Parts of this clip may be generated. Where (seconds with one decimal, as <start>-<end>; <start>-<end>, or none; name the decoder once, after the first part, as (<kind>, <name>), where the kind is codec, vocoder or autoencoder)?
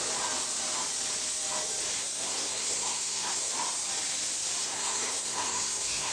2.0-3.5 (codec, SNAC); 4.6-6.1